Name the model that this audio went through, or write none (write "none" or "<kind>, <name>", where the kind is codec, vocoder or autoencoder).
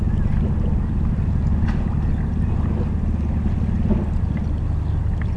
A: none